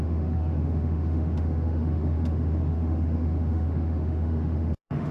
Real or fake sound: fake